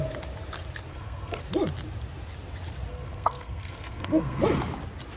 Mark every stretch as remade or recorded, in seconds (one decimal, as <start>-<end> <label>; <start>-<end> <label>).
0.0-0.9 recorded; 0.9-1.4 remade; 1.4-2.9 recorded; 2.9-4.4 remade; 4.4-5.2 recorded